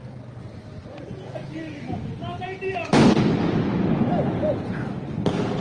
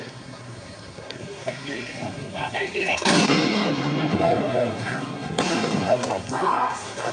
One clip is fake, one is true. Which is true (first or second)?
first